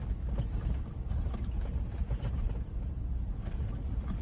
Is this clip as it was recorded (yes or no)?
no